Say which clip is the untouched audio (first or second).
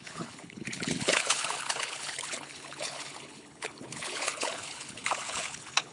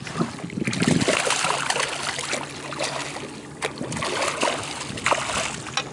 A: second